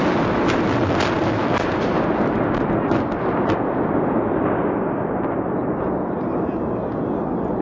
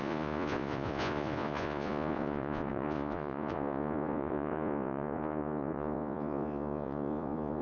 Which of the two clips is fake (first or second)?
second